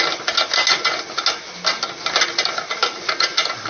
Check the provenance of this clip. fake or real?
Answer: real